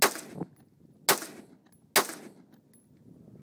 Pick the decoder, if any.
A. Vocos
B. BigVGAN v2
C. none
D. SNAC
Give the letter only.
C